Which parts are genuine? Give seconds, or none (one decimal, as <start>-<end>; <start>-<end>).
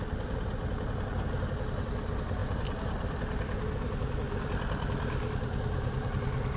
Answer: 0.0-6.6